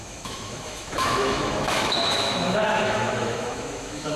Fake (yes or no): yes